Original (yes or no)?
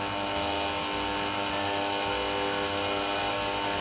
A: yes